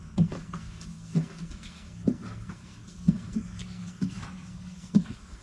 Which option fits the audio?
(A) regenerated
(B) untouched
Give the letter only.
A